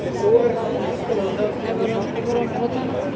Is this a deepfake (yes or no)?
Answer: no